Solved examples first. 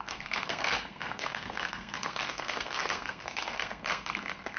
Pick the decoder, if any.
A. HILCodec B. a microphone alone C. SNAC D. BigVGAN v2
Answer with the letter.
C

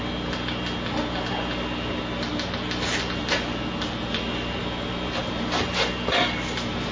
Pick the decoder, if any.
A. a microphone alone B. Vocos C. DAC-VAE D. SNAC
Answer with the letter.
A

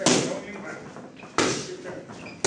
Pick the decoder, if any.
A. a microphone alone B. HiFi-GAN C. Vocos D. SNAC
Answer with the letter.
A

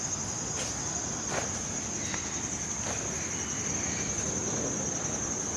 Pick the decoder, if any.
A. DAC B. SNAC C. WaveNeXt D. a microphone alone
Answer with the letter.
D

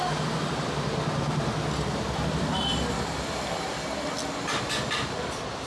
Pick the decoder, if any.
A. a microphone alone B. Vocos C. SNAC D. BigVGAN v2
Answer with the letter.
A